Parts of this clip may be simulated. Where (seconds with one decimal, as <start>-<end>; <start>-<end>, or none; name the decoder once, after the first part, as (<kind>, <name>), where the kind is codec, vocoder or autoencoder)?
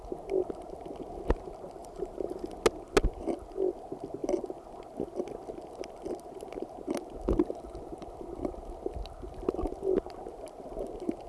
1.8-2.5 (vocoder, BigVGAN v2)